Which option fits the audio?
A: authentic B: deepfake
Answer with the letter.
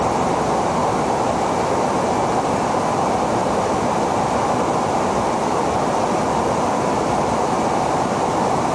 A